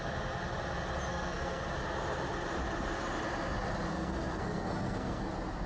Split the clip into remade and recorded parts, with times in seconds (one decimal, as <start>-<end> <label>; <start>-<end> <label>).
0.0-1.1 recorded; 1.1-1.6 remade; 1.6-3.9 recorded; 3.9-5.3 remade; 5.3-5.7 recorded